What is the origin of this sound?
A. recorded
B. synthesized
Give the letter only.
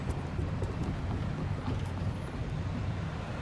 A